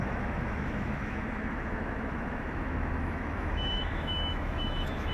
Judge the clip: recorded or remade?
remade